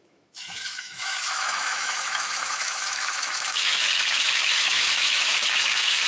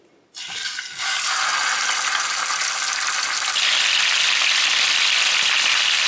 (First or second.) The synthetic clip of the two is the first